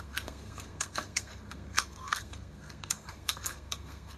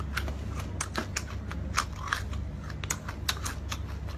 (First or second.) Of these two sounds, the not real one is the first